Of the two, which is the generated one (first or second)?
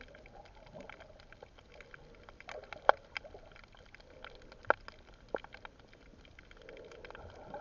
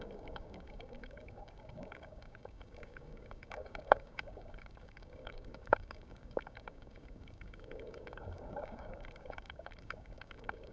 second